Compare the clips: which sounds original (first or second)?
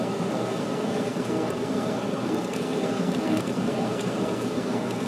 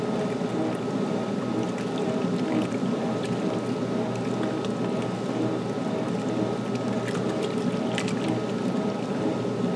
second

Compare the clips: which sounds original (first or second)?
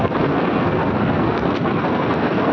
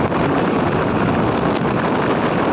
second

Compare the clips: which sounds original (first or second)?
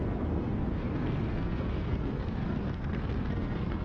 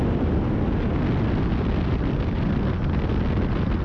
second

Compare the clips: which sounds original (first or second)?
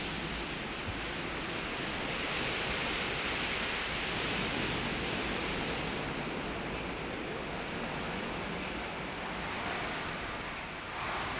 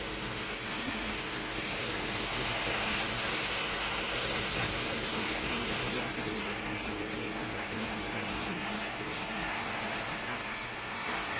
first